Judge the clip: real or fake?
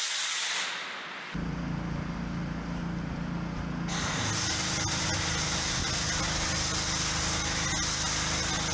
real